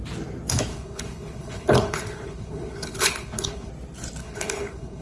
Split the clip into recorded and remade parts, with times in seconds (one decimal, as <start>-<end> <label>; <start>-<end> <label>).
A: 0.0-0.7 recorded; 0.7-3.7 remade; 3.7-4.2 recorded; 4.2-5.0 remade